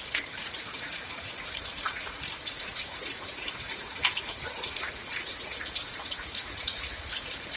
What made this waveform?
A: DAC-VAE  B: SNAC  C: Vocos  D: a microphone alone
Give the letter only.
C